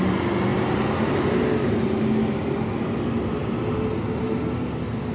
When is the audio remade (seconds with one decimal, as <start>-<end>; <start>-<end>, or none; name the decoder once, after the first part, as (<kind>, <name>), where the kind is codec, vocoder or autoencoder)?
none